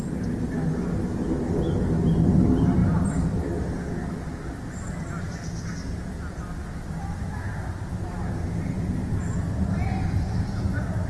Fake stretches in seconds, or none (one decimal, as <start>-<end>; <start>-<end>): none